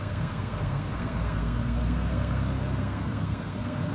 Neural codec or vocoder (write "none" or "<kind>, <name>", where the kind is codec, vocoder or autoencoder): codec, SNAC